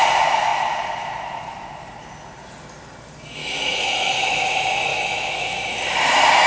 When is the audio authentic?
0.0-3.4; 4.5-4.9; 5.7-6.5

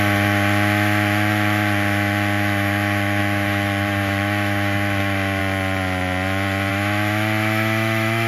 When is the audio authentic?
5.4-6.7

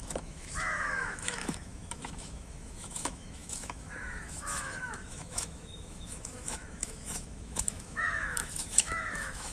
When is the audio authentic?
none

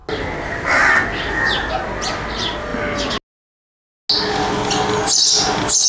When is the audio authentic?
0.0-5.9

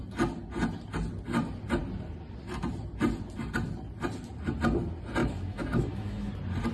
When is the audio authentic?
0.0-5.2; 6.3-6.7

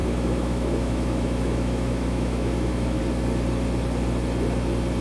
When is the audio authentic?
3.0-5.0